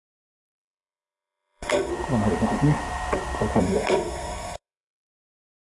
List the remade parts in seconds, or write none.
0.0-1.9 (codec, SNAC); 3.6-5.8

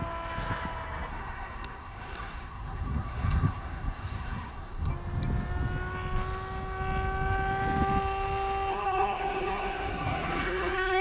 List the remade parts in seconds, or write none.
1.1-4.9 (codec, SNAC); 8.7-11.0

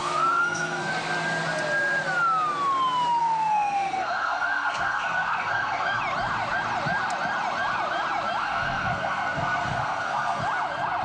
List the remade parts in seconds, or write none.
0.0-0.9 (codec, SNAC); 3.2-6.0; 8.4-10.4

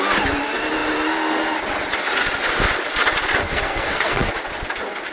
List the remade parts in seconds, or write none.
3.4-4.3 (codec, SNAC)

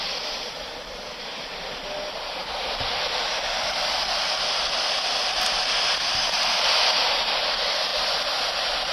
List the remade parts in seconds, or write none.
none